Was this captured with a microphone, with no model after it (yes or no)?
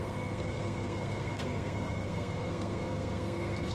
no